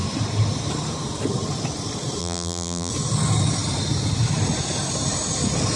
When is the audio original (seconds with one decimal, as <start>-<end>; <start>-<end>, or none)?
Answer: 0.0-2.2; 2.9-5.8